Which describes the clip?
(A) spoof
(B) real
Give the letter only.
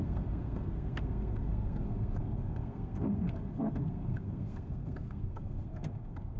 A